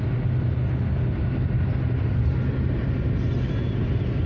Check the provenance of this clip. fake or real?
real